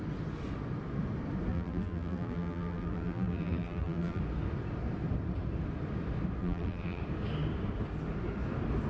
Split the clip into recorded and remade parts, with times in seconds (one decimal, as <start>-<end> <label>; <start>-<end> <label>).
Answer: 0.0-1.5 recorded; 1.5-4.2 remade; 4.2-6.4 recorded; 6.4-7.0 remade; 7.0-8.9 recorded